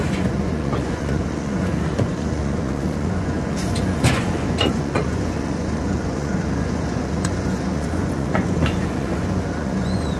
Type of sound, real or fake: fake